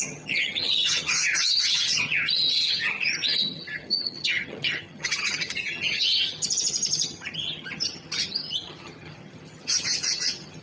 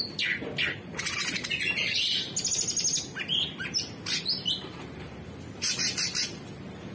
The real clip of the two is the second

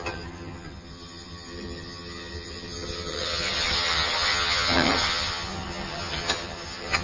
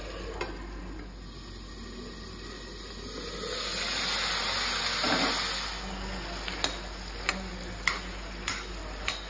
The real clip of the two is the second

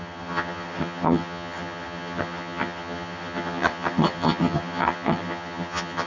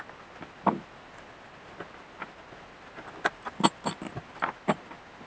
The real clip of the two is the second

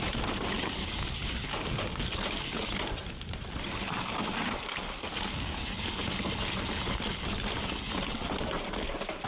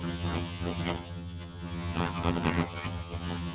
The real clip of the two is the first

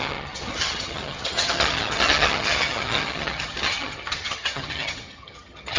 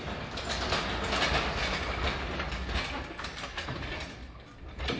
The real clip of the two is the second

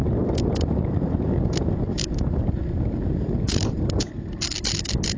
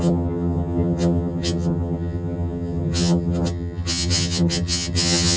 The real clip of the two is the first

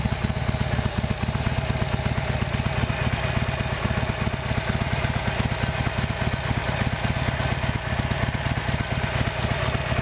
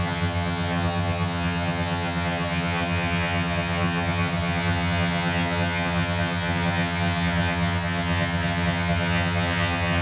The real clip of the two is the first